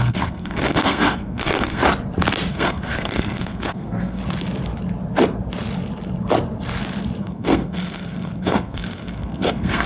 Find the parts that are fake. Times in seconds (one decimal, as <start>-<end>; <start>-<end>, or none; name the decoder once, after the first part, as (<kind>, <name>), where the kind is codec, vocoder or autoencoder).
0.0-1.8 (codec, SNAC); 2.5-4.2; 7.2-9.8